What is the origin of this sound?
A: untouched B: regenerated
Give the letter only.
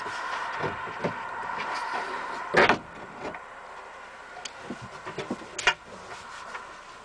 A